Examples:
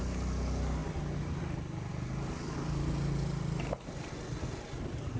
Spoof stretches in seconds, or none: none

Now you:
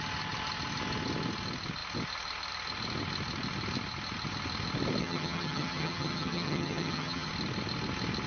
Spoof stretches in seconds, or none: 5.0-7.3 (vocoder, HiFi-GAN)

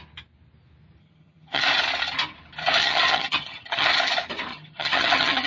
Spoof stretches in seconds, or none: 1.0-1.7 (vocoder, HiFi-GAN); 2.8-3.9; 4.5-5.5

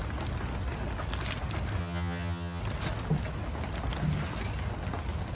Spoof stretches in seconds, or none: 1.8-2.6 (vocoder, HiFi-GAN)

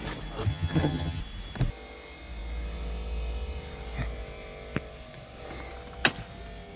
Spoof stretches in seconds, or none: 0.5-1.2 (vocoder, HiFi-GAN)

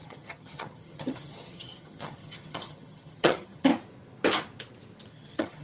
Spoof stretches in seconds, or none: 0.0-3.7 (vocoder, HiFi-GAN); 5.1-5.6